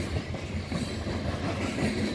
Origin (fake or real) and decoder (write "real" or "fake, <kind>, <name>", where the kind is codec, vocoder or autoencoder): real